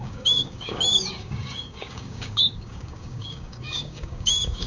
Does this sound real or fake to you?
fake